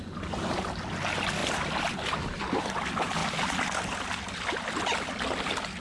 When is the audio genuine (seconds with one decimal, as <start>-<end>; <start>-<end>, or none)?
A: 0.0-5.8